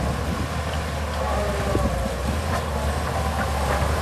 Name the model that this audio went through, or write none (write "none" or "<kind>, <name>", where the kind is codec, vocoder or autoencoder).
none